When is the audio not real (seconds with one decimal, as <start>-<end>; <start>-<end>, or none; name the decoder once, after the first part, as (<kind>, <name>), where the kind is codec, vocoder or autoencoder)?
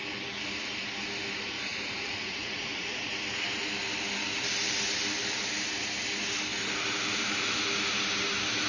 1.7-3.1 (vocoder, Vocos)